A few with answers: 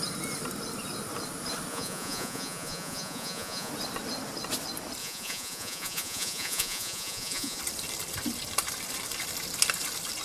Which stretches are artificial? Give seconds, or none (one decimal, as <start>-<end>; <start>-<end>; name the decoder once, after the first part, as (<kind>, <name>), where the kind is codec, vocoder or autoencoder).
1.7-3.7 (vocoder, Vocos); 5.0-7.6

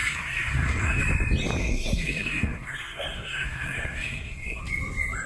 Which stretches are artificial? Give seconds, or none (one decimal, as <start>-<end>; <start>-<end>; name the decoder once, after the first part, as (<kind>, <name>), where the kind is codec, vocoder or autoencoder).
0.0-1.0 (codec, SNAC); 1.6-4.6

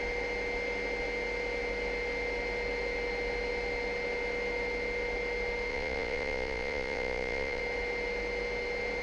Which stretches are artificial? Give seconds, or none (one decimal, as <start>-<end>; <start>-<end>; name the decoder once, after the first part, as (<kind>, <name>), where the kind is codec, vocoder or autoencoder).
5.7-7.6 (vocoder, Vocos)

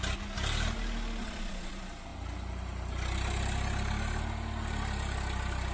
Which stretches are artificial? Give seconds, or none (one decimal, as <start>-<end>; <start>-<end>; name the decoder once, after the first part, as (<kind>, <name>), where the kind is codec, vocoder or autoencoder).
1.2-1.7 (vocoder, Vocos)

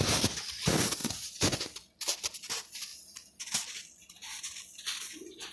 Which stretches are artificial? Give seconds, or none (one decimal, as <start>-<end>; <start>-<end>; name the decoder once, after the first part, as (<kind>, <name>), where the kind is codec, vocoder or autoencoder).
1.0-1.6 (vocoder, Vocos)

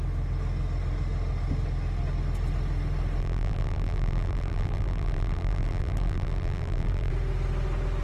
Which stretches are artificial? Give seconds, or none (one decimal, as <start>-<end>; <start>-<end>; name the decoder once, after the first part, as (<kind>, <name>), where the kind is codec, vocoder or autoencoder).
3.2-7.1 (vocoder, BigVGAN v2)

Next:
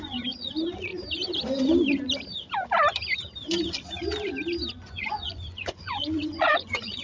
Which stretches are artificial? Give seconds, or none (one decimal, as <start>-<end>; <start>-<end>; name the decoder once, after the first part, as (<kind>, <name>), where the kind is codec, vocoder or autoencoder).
0.0-0.9 (vocoder, Vocos); 4.7-7.0